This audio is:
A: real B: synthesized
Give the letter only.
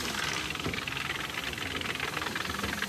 A